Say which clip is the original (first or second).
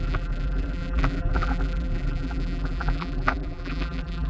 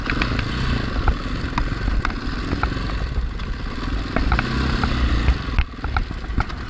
second